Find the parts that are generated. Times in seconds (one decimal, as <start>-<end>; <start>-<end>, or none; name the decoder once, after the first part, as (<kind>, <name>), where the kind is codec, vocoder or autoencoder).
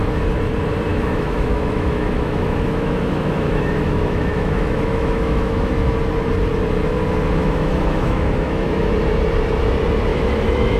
0.9-5.7 (autoencoder, DAC-VAE); 7.4-8.9; 10.1-10.8